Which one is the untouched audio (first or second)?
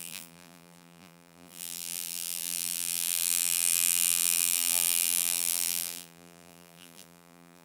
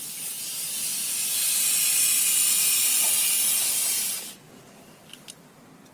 second